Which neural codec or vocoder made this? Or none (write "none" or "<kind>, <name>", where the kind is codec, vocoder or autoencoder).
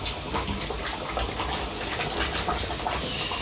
none